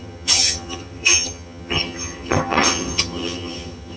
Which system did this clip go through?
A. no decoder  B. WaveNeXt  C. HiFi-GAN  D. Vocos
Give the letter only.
C